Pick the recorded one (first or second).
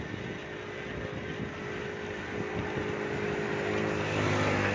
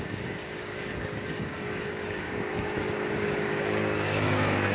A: first